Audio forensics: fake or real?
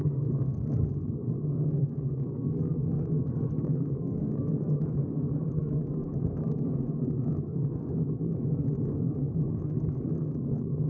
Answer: fake